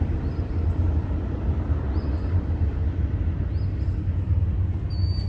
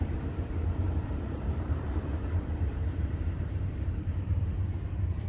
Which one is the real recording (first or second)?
first